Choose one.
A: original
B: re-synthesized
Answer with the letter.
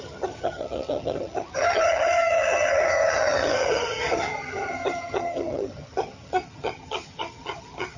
B